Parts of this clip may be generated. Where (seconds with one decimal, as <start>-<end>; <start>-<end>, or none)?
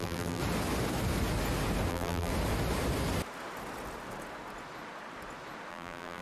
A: 0.0-0.4; 1.9-2.3; 5.7-6.2